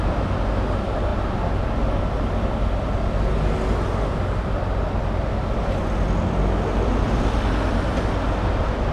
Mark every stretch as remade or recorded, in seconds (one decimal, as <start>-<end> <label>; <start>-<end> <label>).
0.0-8.9 recorded